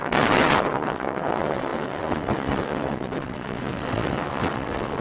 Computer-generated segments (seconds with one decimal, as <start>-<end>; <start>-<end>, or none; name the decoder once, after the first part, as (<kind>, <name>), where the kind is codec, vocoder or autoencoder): 0.0-5.0 (vocoder, WaveNeXt)